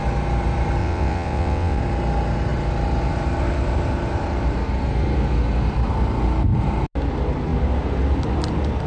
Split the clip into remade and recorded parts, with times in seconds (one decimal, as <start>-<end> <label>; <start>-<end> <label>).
0.0-0.8 recorded; 0.8-1.8 remade; 1.8-8.9 recorded